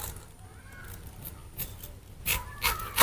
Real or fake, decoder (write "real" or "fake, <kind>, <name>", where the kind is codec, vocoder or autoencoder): real